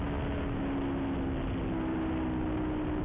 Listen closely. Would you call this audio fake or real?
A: real